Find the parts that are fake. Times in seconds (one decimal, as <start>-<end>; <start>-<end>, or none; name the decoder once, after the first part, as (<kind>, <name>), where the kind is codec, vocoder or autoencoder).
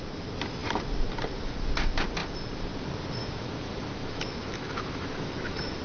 3.2-5.8 (autoencoder, DAC-VAE)